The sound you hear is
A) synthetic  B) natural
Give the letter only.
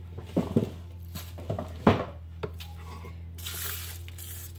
B